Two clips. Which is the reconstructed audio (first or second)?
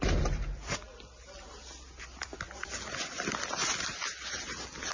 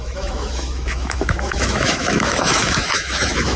second